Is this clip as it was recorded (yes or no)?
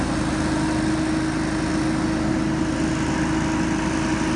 yes